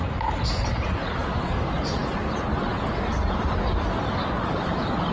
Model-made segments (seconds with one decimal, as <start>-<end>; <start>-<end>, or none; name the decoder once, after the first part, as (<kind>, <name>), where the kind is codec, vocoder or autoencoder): none